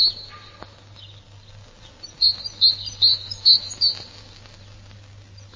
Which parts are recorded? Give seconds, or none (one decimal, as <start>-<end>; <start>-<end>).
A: 0.0-3.1; 3.8-5.6